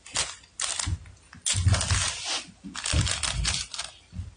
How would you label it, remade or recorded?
recorded